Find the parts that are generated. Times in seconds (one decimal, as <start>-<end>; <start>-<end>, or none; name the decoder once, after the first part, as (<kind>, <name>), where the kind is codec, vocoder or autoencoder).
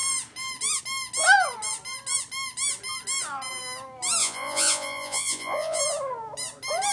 4.2-5.8 (vocoder, Vocos)